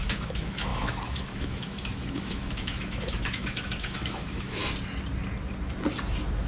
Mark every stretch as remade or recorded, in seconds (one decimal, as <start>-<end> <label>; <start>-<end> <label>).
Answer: 0.0-4.6 remade; 4.6-6.5 recorded